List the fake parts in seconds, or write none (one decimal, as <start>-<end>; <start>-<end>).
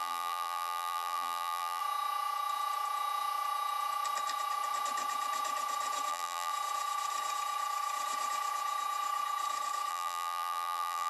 0.0-1.8; 6.1-6.5; 9.9-11.1